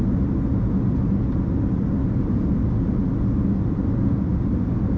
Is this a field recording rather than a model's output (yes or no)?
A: yes